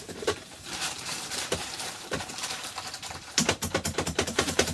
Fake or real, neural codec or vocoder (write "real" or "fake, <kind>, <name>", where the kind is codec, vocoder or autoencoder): fake, vocoder, BigVGAN v2